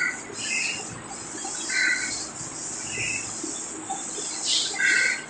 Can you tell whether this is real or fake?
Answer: real